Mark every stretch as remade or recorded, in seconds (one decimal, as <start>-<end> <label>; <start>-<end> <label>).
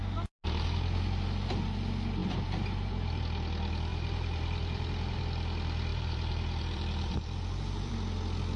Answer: 0.0-2.2 recorded; 2.2-3.2 remade; 3.2-3.9 recorded; 3.9-5.2 remade; 5.2-5.9 recorded; 5.9-7.9 remade; 7.9-8.6 recorded